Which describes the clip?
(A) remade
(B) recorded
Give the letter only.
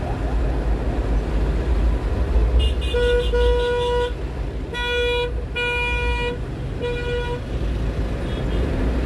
B